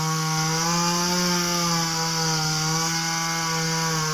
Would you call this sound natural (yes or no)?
yes